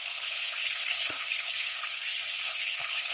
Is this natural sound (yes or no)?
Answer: no